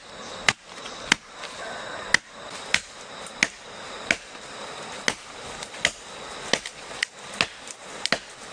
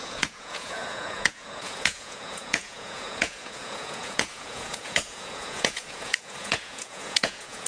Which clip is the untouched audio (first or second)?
first